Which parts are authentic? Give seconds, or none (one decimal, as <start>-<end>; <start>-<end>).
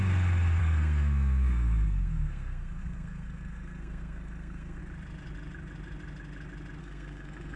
0.0-0.6; 4.8-6.8